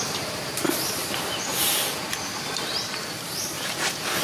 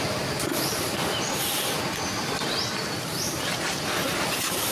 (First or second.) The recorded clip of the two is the second